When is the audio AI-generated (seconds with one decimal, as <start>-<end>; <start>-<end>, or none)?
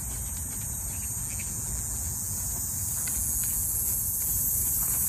0.0-1.2; 4.3-5.1